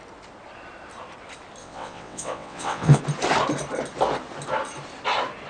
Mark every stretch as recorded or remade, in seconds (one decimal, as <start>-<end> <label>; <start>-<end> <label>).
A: 0.0-1.6 recorded; 1.6-3.0 remade; 3.0-5.5 recorded